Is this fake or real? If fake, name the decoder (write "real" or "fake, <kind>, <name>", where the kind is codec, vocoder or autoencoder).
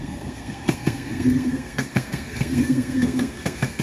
fake, codec, SNAC